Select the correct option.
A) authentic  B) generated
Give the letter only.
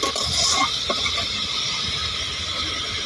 A